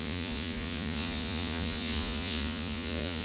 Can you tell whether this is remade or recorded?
remade